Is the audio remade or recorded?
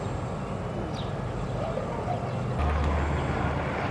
recorded